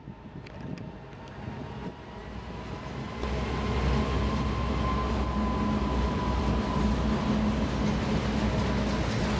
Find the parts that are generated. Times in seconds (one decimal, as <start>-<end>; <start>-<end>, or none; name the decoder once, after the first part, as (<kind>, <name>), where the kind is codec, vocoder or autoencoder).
none